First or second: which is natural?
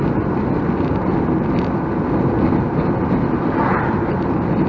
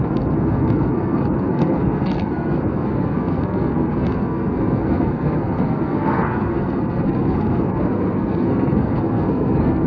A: first